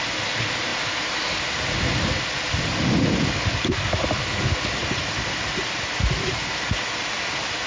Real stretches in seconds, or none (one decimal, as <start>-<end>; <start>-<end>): 0.0-0.7; 4.0-4.8; 7.0-7.7